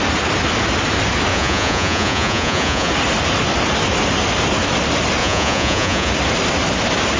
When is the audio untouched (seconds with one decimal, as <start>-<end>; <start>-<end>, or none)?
0.0-1.3; 2.9-5.2; 6.1-7.2